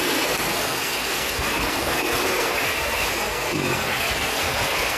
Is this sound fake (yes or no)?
yes